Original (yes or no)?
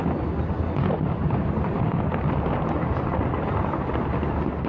yes